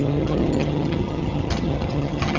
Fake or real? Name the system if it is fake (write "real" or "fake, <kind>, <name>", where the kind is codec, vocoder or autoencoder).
fake, vocoder, HiFi-GAN